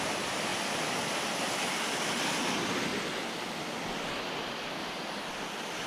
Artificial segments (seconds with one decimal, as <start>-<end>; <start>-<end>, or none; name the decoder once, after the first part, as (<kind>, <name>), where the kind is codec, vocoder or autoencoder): none